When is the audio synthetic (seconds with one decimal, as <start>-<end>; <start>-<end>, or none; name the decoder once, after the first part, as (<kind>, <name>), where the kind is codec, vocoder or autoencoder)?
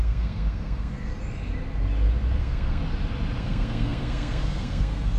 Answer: 0.0-1.1 (codec, SNAC); 2.4-2.8; 3.4-5.2